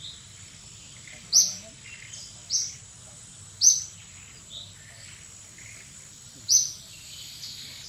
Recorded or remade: recorded